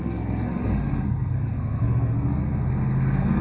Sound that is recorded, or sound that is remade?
remade